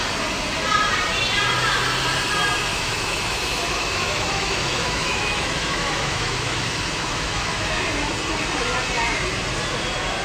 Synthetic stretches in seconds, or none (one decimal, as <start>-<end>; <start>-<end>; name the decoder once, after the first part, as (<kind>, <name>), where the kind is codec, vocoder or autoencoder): 2.7-7.8 (autoencoder, DAC-VAE)